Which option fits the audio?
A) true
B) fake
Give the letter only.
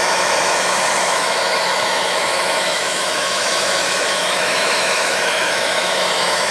B